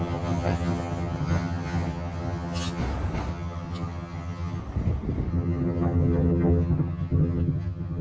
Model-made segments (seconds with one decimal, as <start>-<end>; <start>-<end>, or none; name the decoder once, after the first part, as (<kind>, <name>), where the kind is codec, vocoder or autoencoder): 0.0-2.8 (vocoder, HiFi-GAN); 3.3-4.6; 5.3-8.0